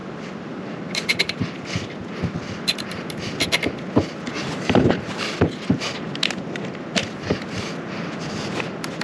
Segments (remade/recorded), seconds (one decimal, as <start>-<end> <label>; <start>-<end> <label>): 0.0-9.0 recorded